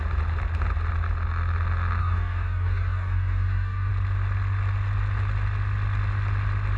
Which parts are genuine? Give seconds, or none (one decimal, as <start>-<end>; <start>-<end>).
0.0-2.0; 3.9-6.8